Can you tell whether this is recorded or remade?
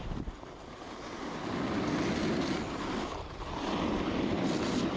recorded